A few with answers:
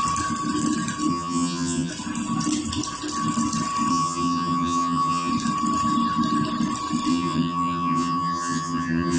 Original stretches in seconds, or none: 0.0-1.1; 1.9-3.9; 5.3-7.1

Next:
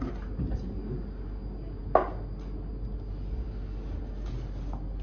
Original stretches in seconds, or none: 0.0-5.0